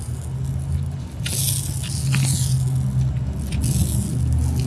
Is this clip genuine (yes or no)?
yes